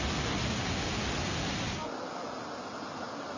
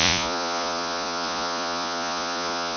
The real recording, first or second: first